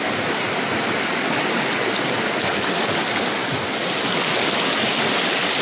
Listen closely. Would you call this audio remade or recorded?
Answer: recorded